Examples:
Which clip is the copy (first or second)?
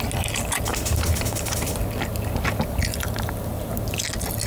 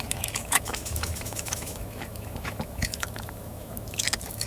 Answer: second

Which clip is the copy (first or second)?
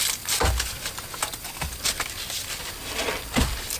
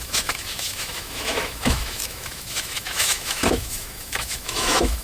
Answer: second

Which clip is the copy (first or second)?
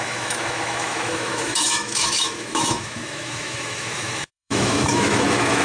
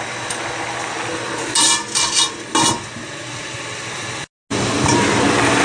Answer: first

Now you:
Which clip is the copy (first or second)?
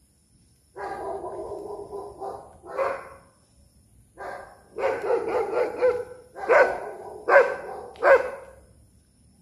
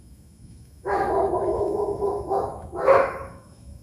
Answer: second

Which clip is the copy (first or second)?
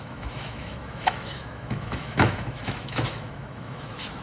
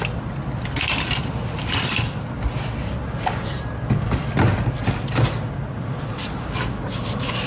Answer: first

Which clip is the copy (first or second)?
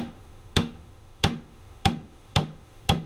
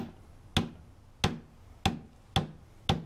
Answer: first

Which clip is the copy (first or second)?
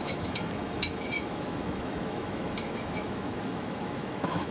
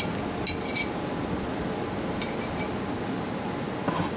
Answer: first